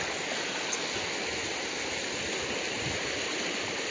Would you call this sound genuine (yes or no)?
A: yes